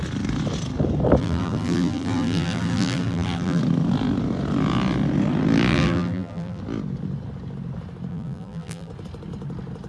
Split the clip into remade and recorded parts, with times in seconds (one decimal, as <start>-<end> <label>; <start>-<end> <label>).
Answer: 0.0-1.2 recorded; 1.2-3.6 remade; 3.6-5.7 recorded; 5.7-6.6 remade; 6.6-8.1 recorded; 8.1-8.9 remade; 8.9-9.9 recorded